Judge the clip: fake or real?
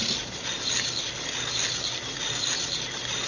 real